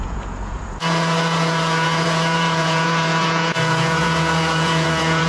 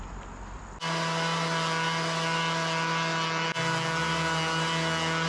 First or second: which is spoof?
first